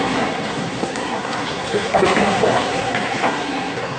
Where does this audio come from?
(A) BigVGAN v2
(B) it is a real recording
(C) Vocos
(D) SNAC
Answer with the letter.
D